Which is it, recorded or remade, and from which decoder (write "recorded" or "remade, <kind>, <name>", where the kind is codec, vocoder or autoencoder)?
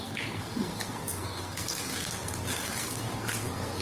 remade, codec, SNAC